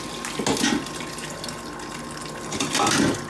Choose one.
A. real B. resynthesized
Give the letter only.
A